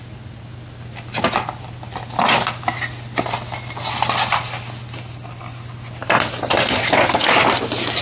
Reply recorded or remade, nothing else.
recorded